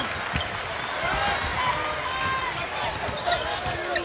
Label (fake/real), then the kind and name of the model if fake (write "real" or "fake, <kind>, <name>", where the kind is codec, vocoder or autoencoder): real